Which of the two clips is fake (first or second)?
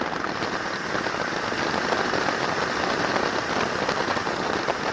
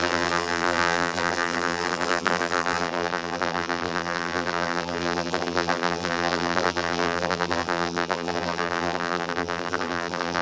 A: second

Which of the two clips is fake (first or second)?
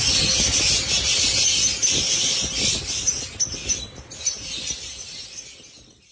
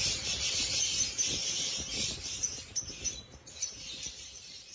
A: second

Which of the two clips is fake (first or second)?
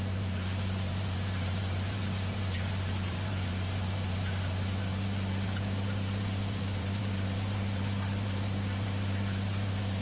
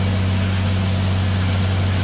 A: first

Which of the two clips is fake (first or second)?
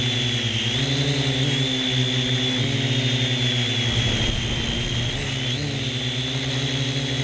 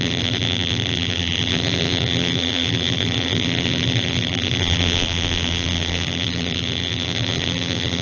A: second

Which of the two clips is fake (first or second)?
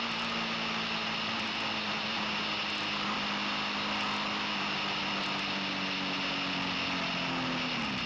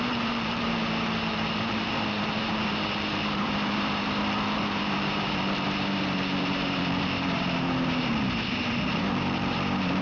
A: second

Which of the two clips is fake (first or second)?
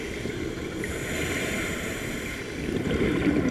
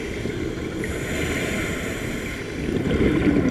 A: first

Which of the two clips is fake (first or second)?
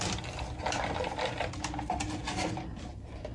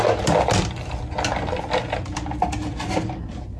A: first